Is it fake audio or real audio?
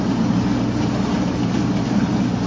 real